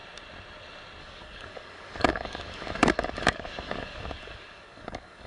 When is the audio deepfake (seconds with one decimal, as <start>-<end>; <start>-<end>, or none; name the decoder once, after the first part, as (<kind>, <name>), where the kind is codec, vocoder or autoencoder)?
1.0-5.3 (codec, DAC)